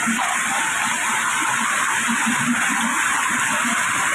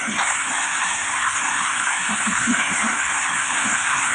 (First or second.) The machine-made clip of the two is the second